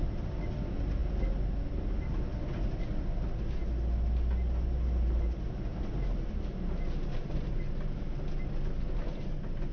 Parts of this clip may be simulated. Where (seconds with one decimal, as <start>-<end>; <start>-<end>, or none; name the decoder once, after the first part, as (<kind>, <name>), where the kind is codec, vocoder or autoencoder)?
none